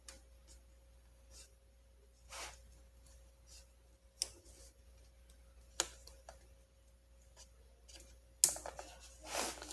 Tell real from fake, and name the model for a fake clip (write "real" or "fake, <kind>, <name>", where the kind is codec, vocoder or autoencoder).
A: real